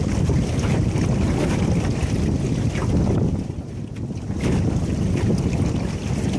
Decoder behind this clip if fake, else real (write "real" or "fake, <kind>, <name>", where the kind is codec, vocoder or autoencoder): real